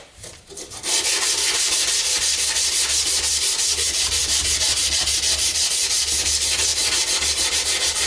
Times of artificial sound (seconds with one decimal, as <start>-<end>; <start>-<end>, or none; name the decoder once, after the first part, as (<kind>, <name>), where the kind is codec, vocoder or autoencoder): 0.0-6.7 (vocoder, BigVGAN v2)